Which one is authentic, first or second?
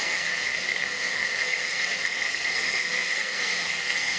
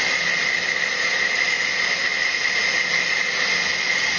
second